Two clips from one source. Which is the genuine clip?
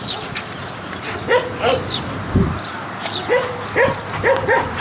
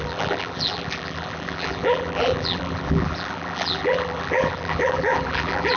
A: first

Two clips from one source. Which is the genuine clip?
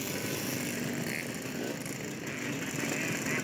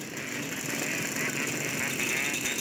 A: first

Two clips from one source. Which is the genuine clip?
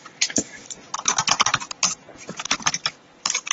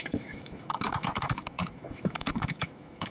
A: first